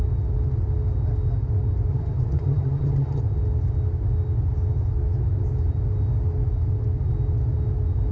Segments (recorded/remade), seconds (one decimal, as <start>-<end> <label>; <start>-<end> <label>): 0.0-1.9 recorded; 1.9-3.2 remade; 3.2-8.1 recorded